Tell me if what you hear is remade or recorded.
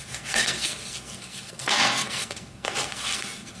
remade